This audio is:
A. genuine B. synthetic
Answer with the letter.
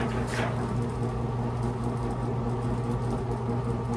A